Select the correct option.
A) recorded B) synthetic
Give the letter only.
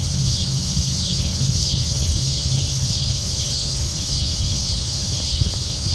B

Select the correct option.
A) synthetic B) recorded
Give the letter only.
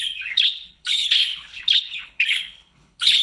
A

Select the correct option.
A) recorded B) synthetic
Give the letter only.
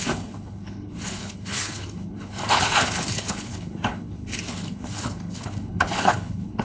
B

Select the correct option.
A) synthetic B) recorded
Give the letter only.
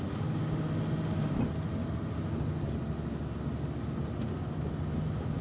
B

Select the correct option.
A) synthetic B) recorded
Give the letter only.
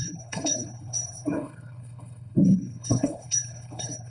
A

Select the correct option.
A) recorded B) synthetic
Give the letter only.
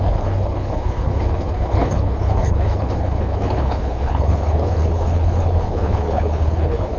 B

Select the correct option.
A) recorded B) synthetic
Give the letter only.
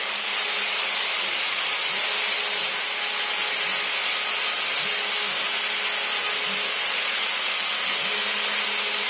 A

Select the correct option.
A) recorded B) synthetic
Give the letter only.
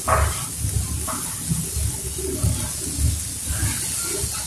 A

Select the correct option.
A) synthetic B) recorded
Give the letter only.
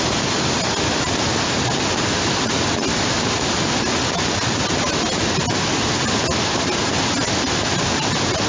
B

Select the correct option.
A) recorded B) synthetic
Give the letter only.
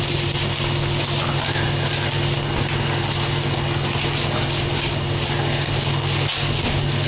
A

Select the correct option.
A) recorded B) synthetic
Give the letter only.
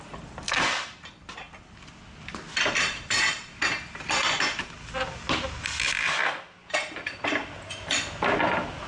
A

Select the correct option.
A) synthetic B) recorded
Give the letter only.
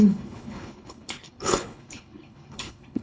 A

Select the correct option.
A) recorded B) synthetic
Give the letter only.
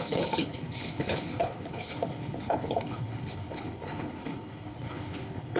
B